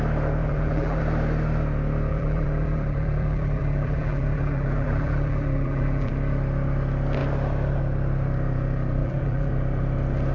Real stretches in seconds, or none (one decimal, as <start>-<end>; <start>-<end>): 0.0-0.4; 1.0-2.1; 6.1-9.0; 9.5-10.3